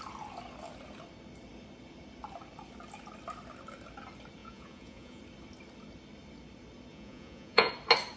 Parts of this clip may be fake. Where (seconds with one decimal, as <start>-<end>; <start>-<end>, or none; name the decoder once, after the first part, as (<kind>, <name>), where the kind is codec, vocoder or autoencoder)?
4.4-5.2 (vocoder, Vocos); 6.9-7.7